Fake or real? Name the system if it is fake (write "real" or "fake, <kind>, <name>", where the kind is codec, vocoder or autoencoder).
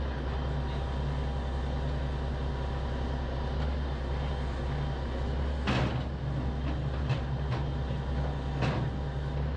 real